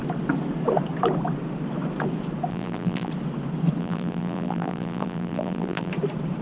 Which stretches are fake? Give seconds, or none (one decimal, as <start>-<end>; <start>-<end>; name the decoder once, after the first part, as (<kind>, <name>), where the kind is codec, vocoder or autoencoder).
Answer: 2.5-3.1 (vocoder, BigVGAN v2); 3.8-5.9

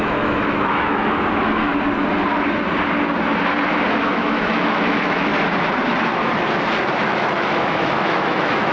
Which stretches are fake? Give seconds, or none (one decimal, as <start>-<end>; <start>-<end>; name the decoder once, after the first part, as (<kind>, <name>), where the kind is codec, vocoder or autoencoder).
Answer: 0.0-1.7 (autoencoder, DAC-VAE); 4.1-5.3; 7.0-8.7

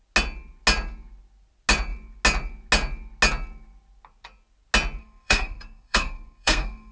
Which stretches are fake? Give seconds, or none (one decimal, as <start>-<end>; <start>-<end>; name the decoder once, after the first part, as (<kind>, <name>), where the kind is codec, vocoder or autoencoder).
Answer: 5.0-6.9 (codec, SNAC)

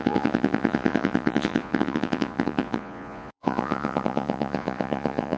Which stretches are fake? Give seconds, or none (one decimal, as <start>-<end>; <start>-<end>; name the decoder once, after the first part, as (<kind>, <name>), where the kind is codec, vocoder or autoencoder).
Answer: 0.0-5.4 (vocoder, Vocos)

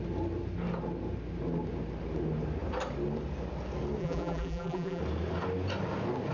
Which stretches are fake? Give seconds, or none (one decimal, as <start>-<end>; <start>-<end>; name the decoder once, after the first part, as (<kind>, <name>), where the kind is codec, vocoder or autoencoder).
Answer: 4.0-5.0 (vocoder, BigVGAN v2)